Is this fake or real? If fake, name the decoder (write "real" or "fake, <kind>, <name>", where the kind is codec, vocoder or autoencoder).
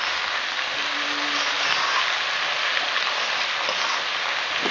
real